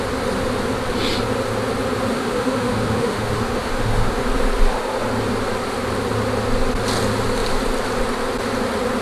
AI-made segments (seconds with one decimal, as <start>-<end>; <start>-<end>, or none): 2.1-4.2